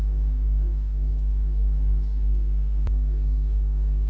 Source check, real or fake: fake